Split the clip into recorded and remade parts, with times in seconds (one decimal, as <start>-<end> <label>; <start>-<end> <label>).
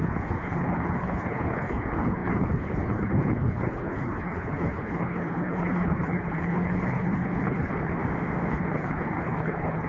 0.0-8.0 remade; 8.0-8.5 recorded; 8.5-9.9 remade